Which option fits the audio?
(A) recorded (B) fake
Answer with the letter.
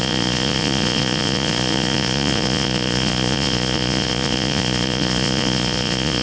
B